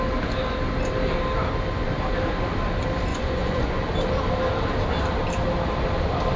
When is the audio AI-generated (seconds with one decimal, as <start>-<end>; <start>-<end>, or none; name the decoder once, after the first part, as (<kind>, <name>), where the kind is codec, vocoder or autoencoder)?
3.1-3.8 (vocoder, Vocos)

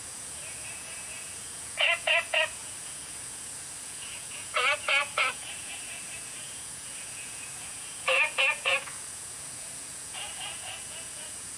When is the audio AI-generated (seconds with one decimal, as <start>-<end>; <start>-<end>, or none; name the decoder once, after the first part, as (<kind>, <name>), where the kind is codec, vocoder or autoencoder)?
0.0-11.6 (vocoder, Vocos)

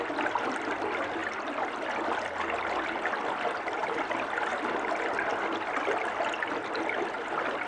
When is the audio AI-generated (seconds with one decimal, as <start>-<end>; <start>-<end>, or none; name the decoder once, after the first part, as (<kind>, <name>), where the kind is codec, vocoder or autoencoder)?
none

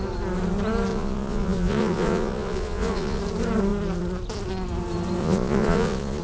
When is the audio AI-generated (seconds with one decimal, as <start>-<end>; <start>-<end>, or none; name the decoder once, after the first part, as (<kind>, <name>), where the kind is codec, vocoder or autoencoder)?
0.9-3.2 (vocoder, Vocos); 5.2-6.2

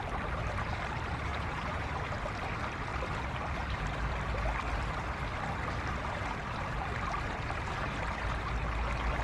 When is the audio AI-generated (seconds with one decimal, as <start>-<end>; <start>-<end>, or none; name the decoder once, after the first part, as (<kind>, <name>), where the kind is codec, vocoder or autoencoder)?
1.3-1.9 (vocoder, Vocos)

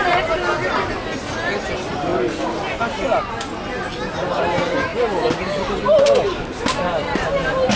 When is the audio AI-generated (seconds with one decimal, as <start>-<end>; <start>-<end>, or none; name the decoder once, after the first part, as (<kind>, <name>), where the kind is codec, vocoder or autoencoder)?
none

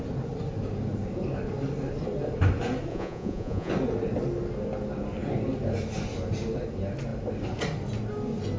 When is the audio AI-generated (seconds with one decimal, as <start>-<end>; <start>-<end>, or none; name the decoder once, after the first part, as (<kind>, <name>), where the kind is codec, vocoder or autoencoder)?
2.9-3.7 (vocoder, Vocos)

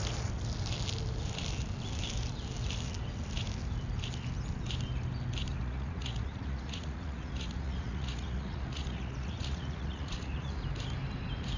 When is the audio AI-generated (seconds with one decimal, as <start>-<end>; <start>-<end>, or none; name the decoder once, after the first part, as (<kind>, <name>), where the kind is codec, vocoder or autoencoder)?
5.5-10.6 (vocoder, Vocos)